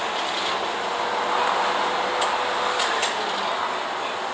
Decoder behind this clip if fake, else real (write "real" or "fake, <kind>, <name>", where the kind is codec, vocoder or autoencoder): real